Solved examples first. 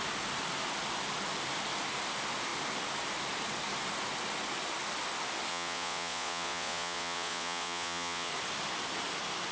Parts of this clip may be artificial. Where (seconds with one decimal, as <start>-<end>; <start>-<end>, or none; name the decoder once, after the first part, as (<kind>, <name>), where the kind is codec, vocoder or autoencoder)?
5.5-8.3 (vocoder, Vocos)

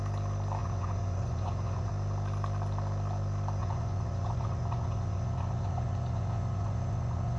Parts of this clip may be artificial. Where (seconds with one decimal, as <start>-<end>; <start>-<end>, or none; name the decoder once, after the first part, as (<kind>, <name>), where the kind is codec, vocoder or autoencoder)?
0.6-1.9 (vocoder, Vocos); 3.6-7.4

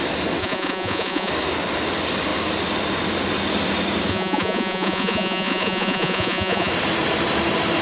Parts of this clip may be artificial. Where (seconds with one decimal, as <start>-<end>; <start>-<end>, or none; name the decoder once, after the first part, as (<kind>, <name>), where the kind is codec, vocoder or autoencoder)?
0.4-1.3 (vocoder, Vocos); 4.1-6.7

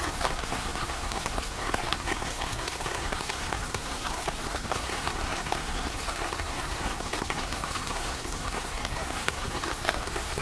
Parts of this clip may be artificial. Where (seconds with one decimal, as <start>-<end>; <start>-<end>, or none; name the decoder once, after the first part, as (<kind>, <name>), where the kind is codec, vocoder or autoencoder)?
0.0-10.4 (codec, SNAC)

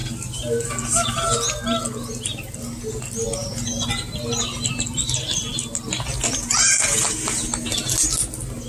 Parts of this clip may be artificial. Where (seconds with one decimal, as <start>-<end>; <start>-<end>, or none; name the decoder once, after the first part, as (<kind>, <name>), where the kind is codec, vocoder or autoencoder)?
none